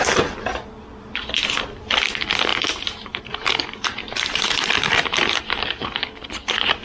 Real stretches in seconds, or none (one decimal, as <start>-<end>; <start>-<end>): 0.0-2.5; 5.4-6.8